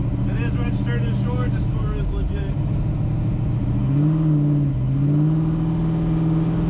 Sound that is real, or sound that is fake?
real